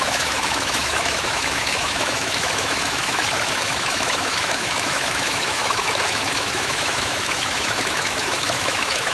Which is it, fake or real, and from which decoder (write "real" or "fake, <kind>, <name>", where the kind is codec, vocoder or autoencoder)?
fake, autoencoder, DAC-VAE